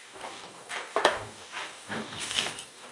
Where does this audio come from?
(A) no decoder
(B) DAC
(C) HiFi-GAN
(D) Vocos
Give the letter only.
B